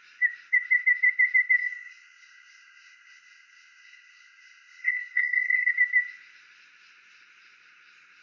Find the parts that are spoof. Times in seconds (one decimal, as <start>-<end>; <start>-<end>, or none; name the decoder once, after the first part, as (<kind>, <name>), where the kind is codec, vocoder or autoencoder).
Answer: 1.6-5.7 (codec, SNAC)